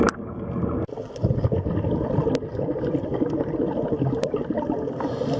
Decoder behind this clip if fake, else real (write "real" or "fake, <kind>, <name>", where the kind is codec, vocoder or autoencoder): real